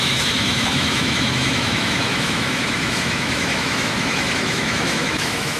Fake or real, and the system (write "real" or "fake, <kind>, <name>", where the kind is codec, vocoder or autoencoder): fake, autoencoder, DAC-VAE